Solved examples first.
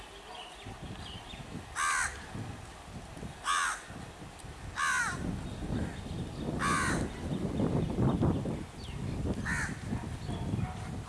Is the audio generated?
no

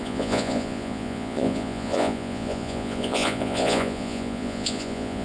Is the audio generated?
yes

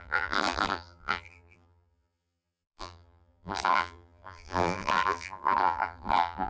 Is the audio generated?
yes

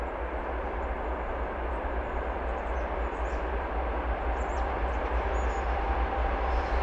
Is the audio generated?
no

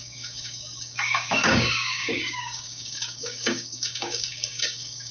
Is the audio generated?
yes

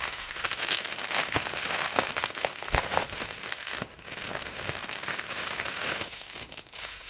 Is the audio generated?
yes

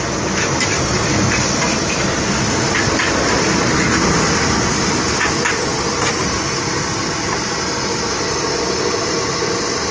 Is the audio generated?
no